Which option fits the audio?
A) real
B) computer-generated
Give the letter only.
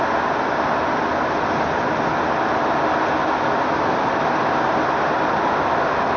A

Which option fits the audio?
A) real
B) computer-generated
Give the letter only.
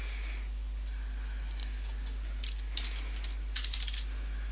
A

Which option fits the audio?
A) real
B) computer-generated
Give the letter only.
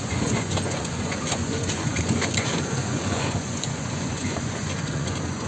B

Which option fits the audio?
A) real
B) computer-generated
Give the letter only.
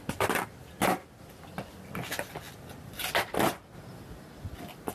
A